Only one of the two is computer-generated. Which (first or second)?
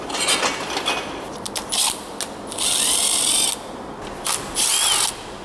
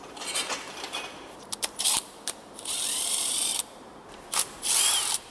second